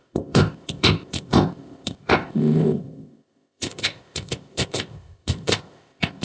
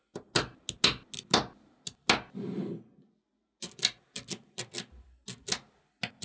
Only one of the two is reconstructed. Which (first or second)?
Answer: first